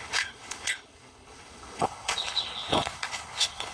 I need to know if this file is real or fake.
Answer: fake